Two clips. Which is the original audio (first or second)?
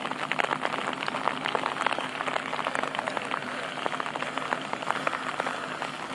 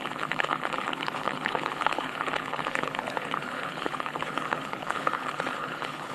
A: first